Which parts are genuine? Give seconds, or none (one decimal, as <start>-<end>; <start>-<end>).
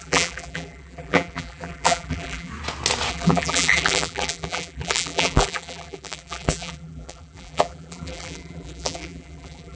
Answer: 2.5-3.1